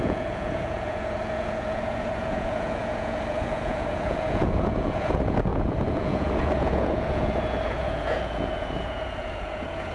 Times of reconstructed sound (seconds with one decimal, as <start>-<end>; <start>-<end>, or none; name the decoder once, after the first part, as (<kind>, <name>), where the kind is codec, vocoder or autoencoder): 0.0-9.9 (vocoder, Vocos)